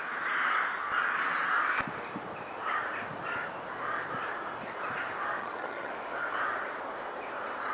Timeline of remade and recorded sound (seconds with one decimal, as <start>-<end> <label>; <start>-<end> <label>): 0.0-5.4 recorded; 5.4-5.9 remade; 5.9-7.7 recorded